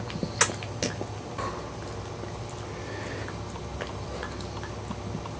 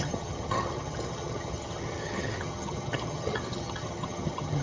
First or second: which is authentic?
first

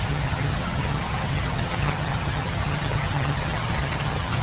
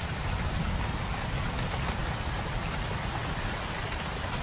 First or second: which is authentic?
second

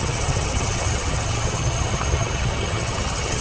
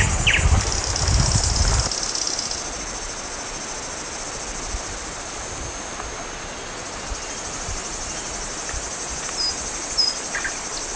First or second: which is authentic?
second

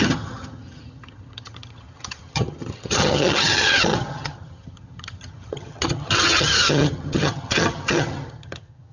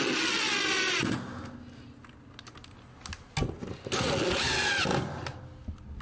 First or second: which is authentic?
second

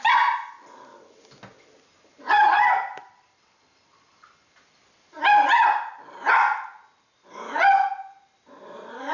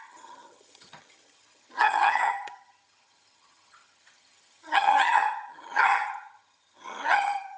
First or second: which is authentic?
first